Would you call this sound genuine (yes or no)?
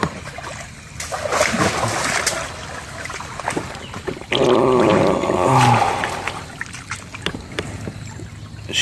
yes